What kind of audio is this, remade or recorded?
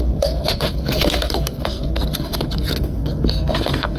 remade